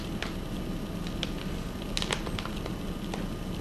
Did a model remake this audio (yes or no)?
no